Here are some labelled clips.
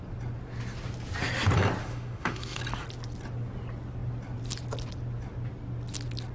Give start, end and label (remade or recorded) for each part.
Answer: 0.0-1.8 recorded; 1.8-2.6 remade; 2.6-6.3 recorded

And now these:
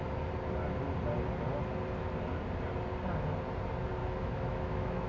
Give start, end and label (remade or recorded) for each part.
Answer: 0.0-4.0 recorded; 4.0-5.1 remade

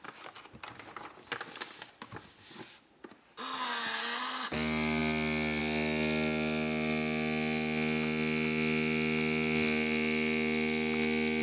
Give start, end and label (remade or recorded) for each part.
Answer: 0.0-11.4 recorded

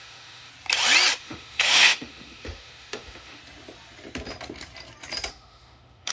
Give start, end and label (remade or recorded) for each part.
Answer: 0.0-0.5 remade; 0.5-1.2 recorded; 1.2-3.4 remade; 3.4-5.3 recorded; 5.3-6.1 remade

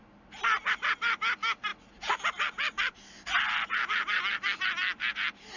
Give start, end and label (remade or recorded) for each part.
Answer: 0.0-5.6 recorded

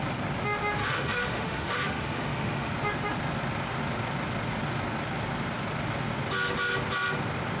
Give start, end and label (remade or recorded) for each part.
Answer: 0.0-0.8 recorded; 0.8-2.7 remade; 2.7-7.6 recorded